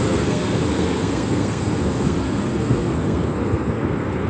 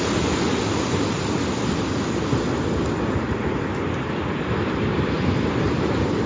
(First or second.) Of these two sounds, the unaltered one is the second